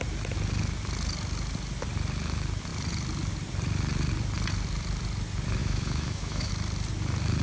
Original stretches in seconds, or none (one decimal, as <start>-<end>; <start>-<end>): 0.0-5.6; 6.5-7.4